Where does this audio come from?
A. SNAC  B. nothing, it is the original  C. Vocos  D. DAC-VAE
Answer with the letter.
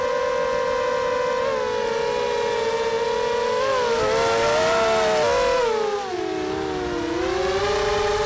B